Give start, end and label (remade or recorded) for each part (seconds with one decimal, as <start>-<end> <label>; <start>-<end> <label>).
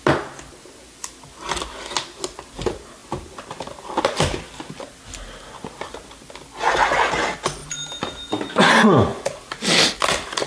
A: 0.0-7.6 recorded; 7.6-8.7 remade; 8.7-10.5 recorded